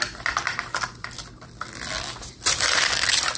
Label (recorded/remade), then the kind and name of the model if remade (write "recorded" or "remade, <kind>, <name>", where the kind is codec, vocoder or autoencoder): recorded